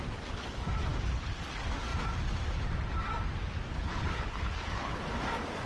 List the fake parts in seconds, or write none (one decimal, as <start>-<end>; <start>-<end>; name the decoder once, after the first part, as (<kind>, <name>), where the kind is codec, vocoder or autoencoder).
3.7-5.0 (codec, HILCodec)